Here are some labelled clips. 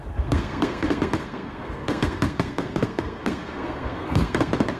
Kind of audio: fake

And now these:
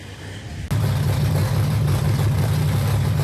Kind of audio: real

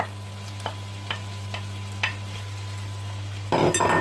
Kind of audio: real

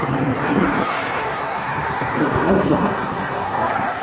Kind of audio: fake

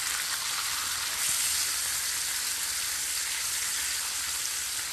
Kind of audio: real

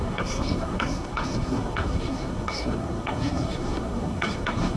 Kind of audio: fake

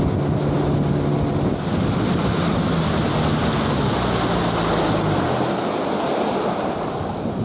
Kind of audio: real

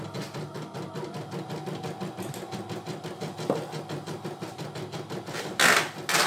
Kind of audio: real